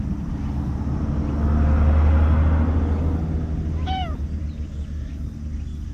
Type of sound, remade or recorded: recorded